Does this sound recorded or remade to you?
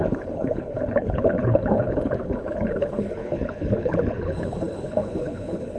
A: remade